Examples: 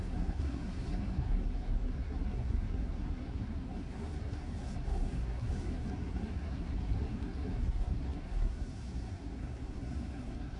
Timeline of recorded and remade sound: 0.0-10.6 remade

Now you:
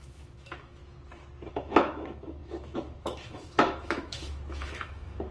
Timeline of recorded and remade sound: 0.0-0.8 remade; 0.8-1.5 recorded; 1.5-5.3 remade

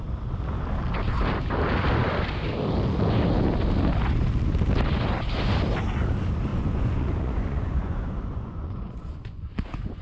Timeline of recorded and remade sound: 0.0-6.5 recorded; 6.5-10.0 remade

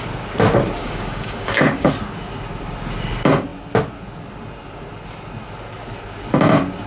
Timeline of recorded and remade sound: 0.0-0.8 recorded; 0.8-1.9 remade; 1.9-6.9 recorded

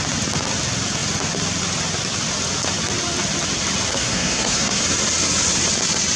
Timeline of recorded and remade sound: 0.0-3.9 recorded; 3.9-4.8 remade; 4.8-6.2 recorded

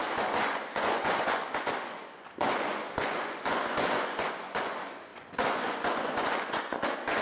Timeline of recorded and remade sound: 0.0-7.2 remade

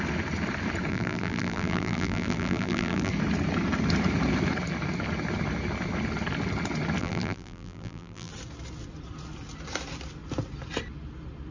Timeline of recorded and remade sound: 0.0-0.9 recorded; 0.9-3.1 remade; 3.1-7.0 recorded; 7.0-8.3 remade; 8.3-11.5 recorded